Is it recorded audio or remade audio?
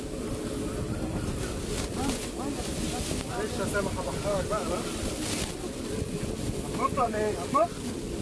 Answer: recorded